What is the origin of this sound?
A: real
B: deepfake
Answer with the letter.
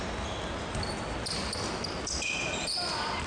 A